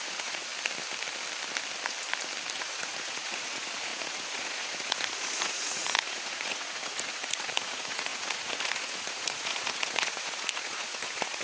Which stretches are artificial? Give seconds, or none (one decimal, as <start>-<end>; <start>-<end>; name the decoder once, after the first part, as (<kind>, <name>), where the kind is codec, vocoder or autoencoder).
0.0-0.5 (vocoder, Vocos); 2.6-11.4